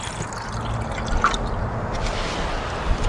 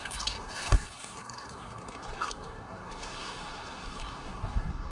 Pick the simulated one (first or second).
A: second